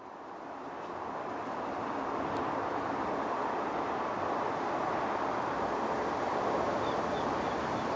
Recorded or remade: recorded